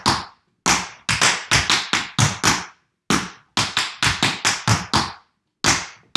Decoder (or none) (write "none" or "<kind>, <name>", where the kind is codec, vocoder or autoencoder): none